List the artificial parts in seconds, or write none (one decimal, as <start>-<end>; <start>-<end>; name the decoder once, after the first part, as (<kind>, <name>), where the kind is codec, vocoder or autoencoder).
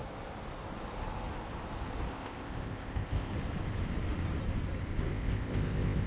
2.1-3.3 (codec, ZipCodec); 5.1-6.1